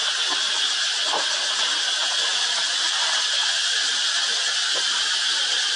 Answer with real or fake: real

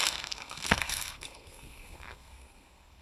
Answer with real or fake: fake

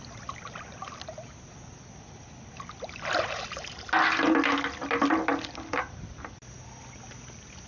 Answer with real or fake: real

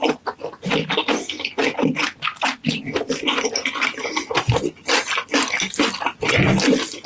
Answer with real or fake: real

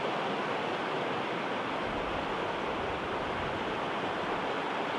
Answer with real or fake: real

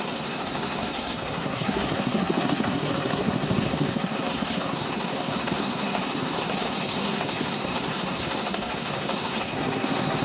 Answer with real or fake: fake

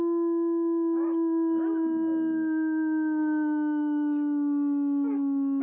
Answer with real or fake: real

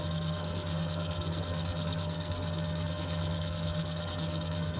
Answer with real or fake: fake